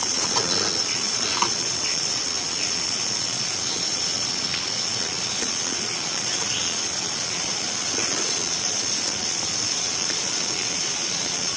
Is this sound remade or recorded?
remade